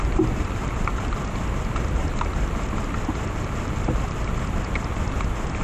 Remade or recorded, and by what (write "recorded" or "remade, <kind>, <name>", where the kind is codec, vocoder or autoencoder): recorded